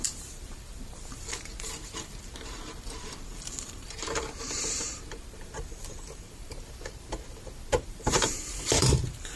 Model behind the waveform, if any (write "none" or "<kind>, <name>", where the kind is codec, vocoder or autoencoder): vocoder, BigVGAN v2